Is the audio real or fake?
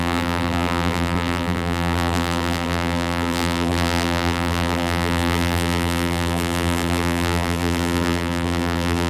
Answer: fake